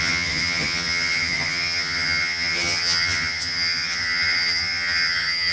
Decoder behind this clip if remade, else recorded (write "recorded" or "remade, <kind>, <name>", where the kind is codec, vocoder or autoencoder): remade, vocoder, HiFi-GAN